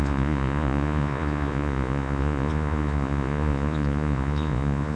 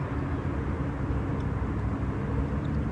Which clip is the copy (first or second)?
first